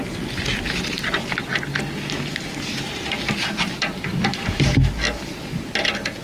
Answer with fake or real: real